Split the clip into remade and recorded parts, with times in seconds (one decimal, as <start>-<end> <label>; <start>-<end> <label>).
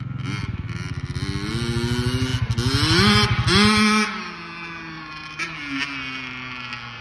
0.0-7.0 recorded